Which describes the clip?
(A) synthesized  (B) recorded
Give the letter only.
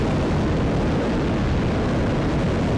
B